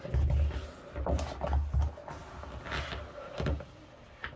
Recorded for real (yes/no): yes